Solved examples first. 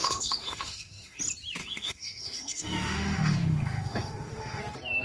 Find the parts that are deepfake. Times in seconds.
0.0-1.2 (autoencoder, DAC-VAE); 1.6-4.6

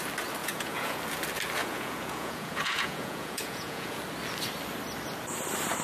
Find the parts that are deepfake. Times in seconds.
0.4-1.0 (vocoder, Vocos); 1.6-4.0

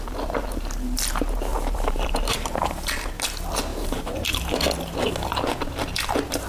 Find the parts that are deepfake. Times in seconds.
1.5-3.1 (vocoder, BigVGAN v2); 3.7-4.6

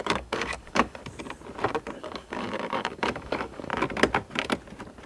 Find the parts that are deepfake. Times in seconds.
0.0-1.0 (codec, DAC); 2.0-3.7

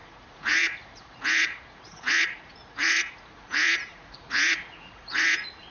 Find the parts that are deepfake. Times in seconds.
0.0-5.7 (vocoder, Vocos)